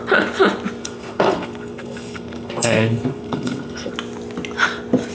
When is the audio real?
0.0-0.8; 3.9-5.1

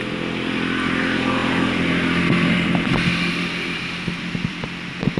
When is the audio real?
0.0-5.2

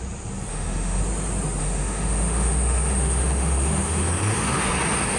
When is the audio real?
0.0-0.5; 1.0-1.6; 4.7-5.2

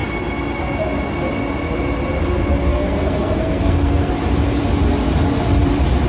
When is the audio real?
0.0-2.7; 4.1-6.1

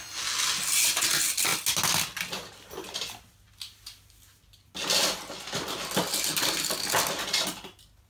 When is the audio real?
0.0-8.1

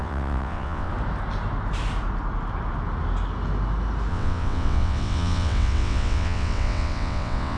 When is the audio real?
0.9-4.1

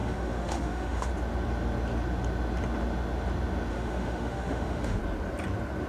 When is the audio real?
1.1-3.7; 5.0-5.9